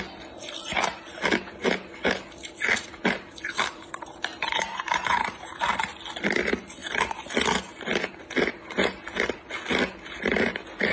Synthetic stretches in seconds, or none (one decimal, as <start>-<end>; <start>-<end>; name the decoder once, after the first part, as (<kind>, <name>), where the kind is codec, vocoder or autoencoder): 3.7-5.7 (vocoder, BigVGAN v2)